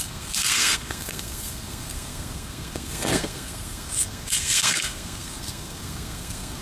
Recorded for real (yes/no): no